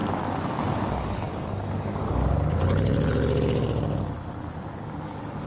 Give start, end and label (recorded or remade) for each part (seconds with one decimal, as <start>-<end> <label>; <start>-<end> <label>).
0.0-0.9 recorded; 0.9-2.2 remade; 2.2-5.0 recorded; 5.0-5.5 remade